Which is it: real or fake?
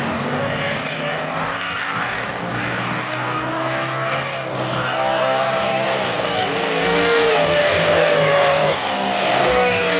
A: fake